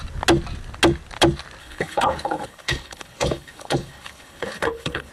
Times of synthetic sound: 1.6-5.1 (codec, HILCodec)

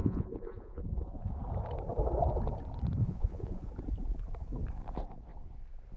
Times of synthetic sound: 0.0-1.3 (vocoder, Vocos); 3.0-3.7

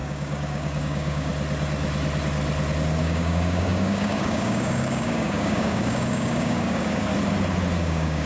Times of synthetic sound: 0.0-1.3 (codec, DAC); 3.0-7.1; 7.8-8.3

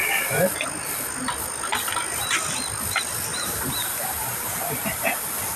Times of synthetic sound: 3.3-5.1 (vocoder, BigVGAN v2)

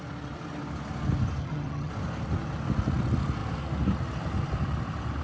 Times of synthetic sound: 1.4-1.9 (vocoder, HiFi-GAN)

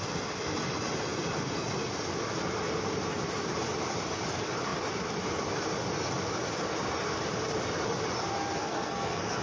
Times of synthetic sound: 8.6-9.4 (codec, SNAC)